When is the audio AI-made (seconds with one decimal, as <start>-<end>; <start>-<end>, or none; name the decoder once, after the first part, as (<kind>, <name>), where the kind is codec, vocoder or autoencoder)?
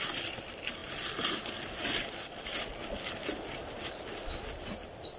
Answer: none